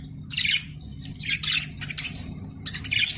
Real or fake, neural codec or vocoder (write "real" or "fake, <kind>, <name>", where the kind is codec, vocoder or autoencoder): real